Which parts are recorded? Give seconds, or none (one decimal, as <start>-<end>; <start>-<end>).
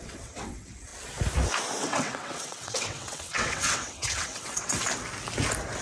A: 0.9-1.8; 4.8-5.8